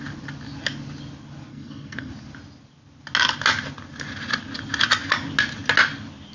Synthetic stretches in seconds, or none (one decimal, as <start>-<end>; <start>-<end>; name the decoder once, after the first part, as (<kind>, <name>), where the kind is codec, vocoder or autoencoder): 1.5-2.1 (codec, SNAC)